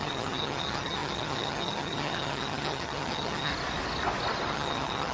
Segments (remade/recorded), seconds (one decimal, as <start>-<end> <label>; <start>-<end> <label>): 0.0-3.5 remade; 3.5-4.5 recorded; 4.5-5.1 remade